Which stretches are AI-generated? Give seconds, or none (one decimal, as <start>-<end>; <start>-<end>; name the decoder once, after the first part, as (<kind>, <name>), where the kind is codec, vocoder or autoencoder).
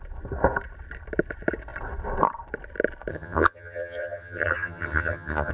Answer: 3.1-5.5 (vocoder, HiFi-GAN)